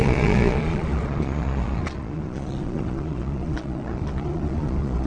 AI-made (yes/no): yes